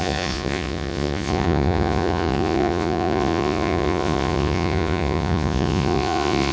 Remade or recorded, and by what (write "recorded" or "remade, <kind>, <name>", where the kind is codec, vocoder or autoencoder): remade, vocoder, Vocos